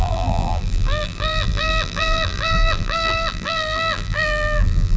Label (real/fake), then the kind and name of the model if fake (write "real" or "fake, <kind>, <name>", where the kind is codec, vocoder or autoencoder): fake, vocoder, BigVGAN v2